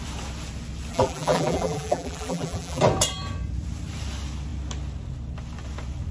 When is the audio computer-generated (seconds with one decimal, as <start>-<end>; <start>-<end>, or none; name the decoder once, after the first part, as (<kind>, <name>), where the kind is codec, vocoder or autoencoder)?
0.9-2.8 (vocoder, BigVGAN v2)